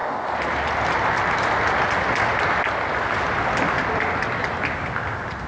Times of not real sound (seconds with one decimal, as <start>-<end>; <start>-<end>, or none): none